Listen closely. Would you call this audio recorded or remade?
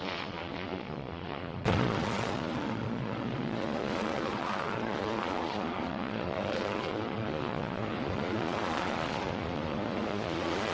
remade